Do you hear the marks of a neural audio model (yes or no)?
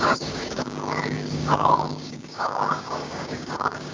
yes